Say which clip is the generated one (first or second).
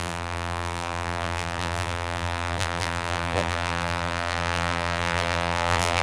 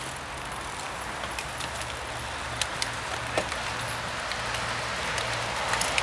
first